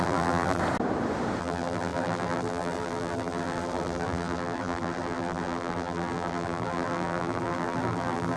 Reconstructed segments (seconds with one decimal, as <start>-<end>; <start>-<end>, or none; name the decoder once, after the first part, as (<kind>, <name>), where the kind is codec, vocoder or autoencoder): 0.0-0.6 (vocoder, BigVGAN v2); 1.4-8.4